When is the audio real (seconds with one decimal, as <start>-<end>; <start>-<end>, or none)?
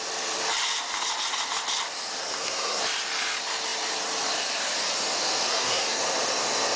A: 0.0-2.2; 2.8-5.5; 6.0-6.8